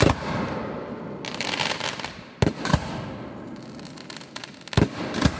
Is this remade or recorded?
recorded